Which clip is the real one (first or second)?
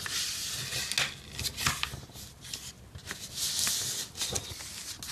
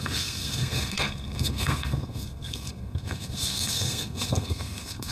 first